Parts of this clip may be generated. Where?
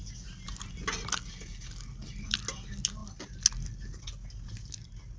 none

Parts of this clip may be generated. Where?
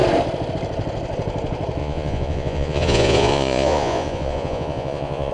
1.8-5.3 (vocoder, Vocos)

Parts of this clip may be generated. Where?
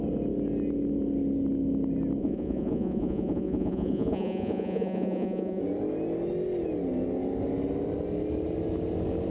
2.2-5.6 (vocoder, Vocos)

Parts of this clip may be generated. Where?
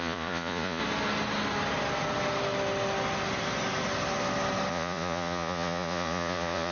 0.0-0.8 (vocoder, Vocos); 4.7-6.7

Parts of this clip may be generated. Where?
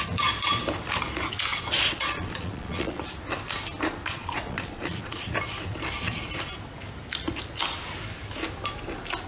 1.5-3.0 (vocoder, Vocos); 4.0-5.3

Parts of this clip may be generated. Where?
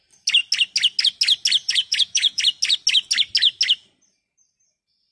1.6-2.4 (vocoder, Vocos)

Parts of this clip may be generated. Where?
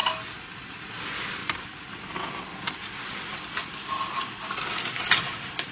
none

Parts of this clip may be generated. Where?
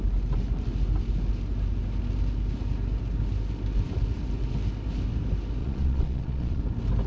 5.6-6.6 (vocoder, Vocos)